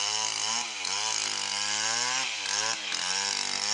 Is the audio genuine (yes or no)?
yes